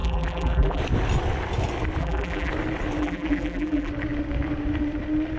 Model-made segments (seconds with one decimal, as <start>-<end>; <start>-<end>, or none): 0.0-0.8; 2.0-2.5; 3.0-3.9